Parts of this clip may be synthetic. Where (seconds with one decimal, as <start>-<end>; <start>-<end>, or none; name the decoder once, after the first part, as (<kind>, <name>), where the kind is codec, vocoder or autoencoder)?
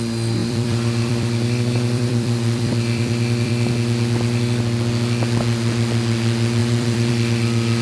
0.4-3.7 (vocoder, BigVGAN v2); 6.6-7.1